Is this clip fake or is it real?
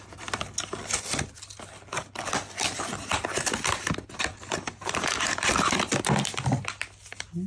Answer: real